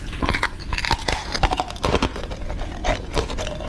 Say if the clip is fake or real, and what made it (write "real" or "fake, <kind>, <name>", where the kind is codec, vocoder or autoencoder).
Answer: real